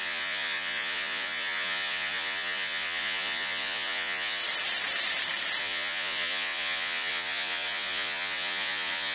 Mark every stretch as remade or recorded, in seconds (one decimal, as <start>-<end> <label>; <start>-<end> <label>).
0.0-4.4 remade; 4.4-5.6 recorded; 5.6-9.1 remade